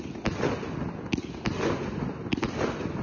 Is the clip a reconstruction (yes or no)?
no